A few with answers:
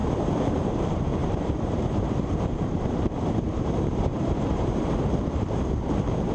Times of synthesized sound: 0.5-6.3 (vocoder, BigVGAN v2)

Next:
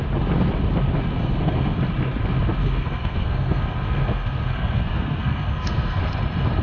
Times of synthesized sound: 1.2-1.8 (codec, SNAC); 2.6-6.0

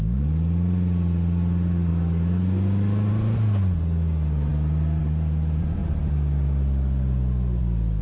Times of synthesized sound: none

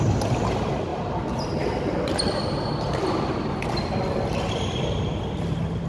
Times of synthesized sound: 0.9-3.9 (vocoder, BigVGAN v2)